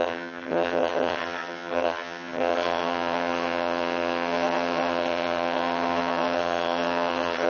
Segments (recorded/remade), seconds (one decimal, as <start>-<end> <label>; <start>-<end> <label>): 0.0-7.5 remade